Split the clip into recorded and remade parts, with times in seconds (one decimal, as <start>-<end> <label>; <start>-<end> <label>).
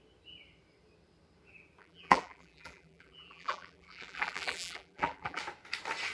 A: 0.0-1.8 recorded; 1.8-5.4 remade; 5.4-6.1 recorded